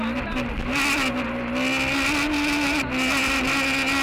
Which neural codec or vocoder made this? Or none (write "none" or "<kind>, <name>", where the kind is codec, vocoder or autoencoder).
none